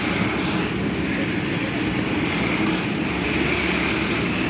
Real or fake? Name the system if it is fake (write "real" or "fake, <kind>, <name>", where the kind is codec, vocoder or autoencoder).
real